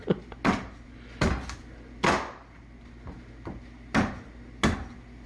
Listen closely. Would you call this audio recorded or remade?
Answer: recorded